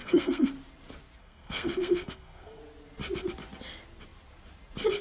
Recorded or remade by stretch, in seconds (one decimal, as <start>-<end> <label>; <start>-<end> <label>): 0.0-0.5 remade; 0.5-1.2 recorded; 1.2-2.6 remade; 2.6-5.0 recorded